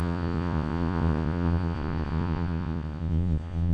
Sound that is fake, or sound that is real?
fake